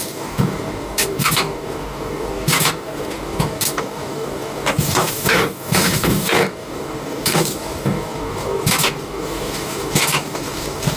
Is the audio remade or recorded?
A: remade